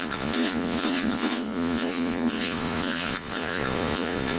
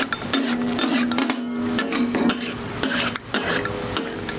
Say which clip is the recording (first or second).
second